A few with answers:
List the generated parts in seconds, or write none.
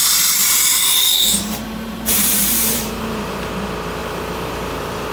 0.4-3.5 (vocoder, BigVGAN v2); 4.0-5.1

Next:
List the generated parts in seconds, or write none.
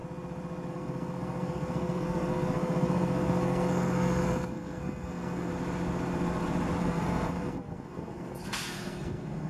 0.7-5.5 (codec, SNAC); 6.8-9.5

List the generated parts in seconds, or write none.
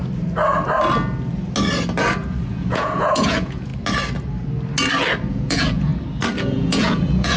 2.5-3.7 (vocoder, Vocos); 5.3-5.9; 6.4-7.4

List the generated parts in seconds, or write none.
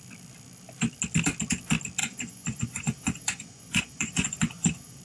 2.0-5.0 (vocoder, Vocos)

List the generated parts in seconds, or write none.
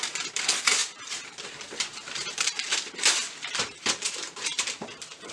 0.8-1.5 (vocoder, BigVGAN v2); 1.9-5.3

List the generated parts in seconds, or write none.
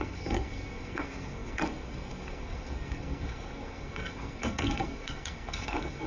0.0-6.1 (codec, SNAC)